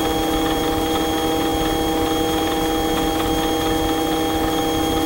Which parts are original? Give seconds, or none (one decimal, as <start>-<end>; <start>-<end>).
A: 0.0-5.1